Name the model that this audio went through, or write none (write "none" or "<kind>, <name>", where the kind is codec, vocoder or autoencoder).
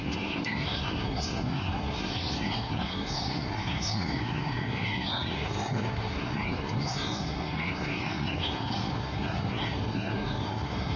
codec, SNAC